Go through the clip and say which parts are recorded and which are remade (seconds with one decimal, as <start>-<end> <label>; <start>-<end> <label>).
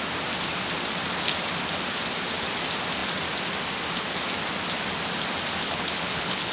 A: 0.0-5.6 recorded; 5.6-6.5 remade